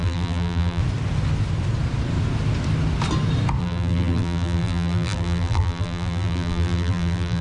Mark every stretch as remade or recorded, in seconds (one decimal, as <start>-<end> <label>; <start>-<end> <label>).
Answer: 0.0-0.8 remade; 0.8-3.6 recorded; 3.6-7.4 remade